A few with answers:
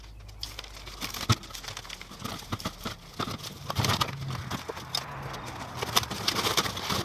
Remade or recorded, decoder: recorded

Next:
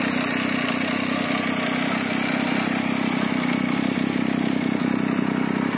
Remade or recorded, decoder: recorded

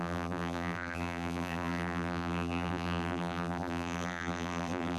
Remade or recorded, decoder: remade, vocoder, BigVGAN v2